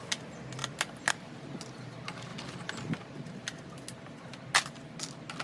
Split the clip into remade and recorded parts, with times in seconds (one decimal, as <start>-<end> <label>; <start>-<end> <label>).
0.0-5.4 recorded